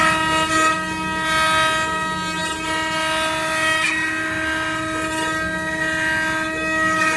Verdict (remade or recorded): recorded